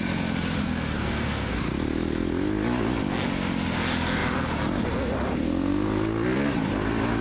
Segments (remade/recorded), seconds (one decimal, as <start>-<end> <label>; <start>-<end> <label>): 0.0-0.6 recorded; 0.6-1.5 remade; 1.5-7.2 recorded